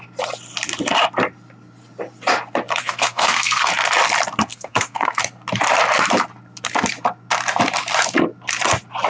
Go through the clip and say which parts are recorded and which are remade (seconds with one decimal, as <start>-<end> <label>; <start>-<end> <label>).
0.0-2.8 recorded; 2.8-3.7 remade; 3.7-4.5 recorded; 4.5-5.2 remade; 5.2-9.1 recorded